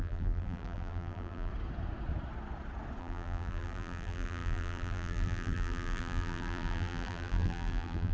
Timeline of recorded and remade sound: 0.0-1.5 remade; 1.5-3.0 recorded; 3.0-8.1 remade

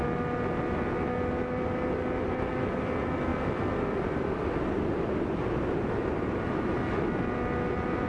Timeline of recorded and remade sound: 0.0-8.1 recorded